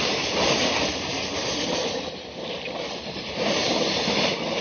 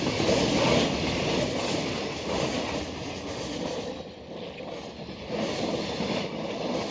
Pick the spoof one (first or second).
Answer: first